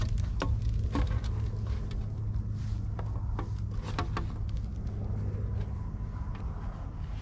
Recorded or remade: recorded